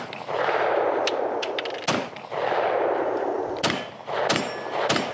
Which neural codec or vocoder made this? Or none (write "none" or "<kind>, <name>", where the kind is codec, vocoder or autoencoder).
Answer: none